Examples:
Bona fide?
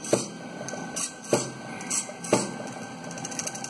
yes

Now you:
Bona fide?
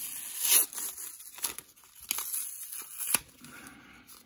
yes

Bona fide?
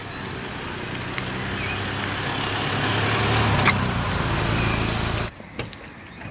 yes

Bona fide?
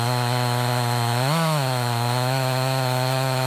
no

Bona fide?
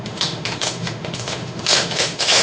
no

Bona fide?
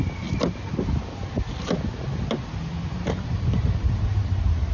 yes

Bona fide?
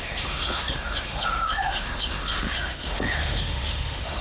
no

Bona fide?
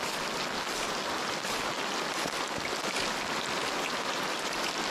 yes